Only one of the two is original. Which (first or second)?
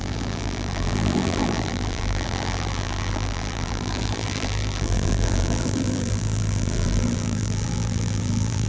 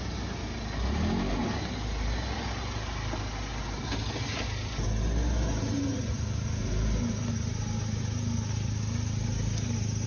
second